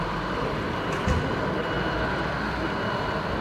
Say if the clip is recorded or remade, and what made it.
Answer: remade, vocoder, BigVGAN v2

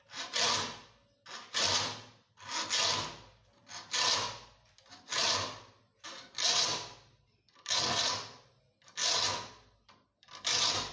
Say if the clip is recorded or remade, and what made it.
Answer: recorded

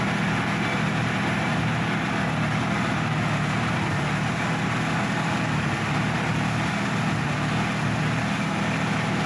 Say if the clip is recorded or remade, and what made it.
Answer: recorded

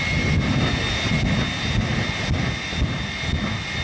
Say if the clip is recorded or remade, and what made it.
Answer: recorded